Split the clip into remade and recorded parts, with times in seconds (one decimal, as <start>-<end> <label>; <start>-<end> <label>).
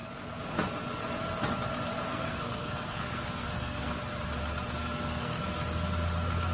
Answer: 0.0-2.1 recorded; 2.1-4.0 remade; 4.0-4.8 recorded; 4.8-5.4 remade; 5.4-6.5 recorded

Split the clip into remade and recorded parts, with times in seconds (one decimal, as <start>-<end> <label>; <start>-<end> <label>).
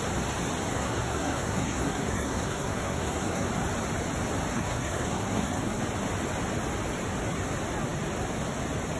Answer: 0.0-0.7 recorded; 0.7-3.5 remade; 3.5-4.5 recorded; 4.5-5.8 remade; 5.8-9.0 recorded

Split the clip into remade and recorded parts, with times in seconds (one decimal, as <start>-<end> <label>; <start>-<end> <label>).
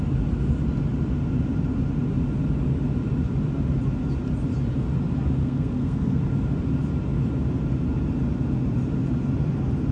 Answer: 0.0-5.4 recorded; 5.4-6.2 remade; 6.2-9.9 recorded